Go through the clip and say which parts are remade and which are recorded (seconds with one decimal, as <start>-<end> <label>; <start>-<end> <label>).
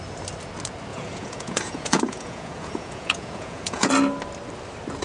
0.0-0.9 recorded; 0.9-3.9 remade; 3.9-5.0 recorded